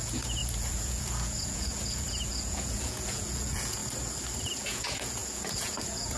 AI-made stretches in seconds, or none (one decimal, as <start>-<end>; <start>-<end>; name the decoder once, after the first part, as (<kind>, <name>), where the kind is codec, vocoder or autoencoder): 0.0-3.8 (vocoder, Vocos); 4.5-6.2